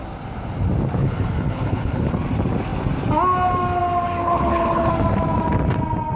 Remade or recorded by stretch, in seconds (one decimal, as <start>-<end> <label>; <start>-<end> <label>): 0.0-1.0 recorded; 1.0-2.1 remade; 2.1-4.2 recorded; 4.2-4.9 remade; 4.9-6.2 recorded